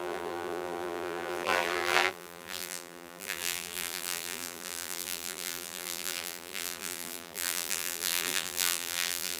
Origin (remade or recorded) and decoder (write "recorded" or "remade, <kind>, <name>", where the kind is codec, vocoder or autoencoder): remade, vocoder, BigVGAN v2